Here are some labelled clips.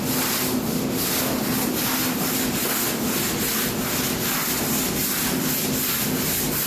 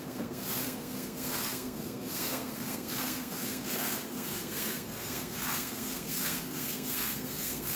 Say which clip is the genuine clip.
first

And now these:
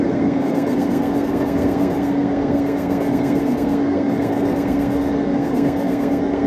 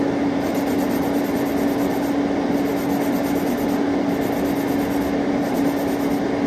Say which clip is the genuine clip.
second